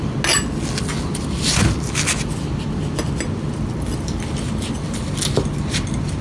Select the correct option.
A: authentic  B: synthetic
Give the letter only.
A